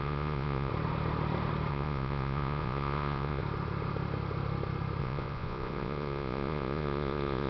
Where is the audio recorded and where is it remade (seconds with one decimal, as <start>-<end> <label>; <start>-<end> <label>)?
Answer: 0.0-0.7 remade; 0.7-1.7 recorded; 1.7-3.4 remade; 3.4-5.0 recorded; 5.0-7.5 remade